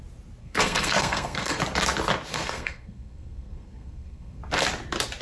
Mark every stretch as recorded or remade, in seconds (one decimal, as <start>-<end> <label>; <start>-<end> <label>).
0.0-0.4 recorded; 0.4-1.6 remade; 1.6-2.3 recorded; 2.3-4.4 remade; 4.4-5.2 recorded